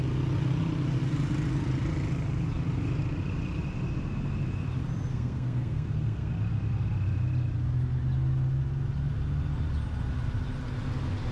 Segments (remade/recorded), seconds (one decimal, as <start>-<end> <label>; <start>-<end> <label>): 0.0-5.1 recorded; 5.1-6.3 remade; 6.3-11.3 recorded